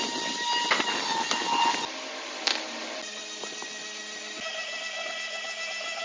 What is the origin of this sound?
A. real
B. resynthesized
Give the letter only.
A